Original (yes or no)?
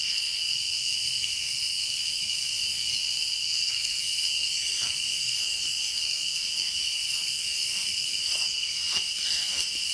no